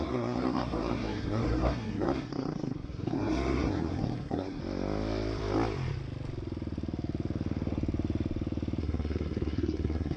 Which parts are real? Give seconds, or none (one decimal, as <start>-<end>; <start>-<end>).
4.6-8.8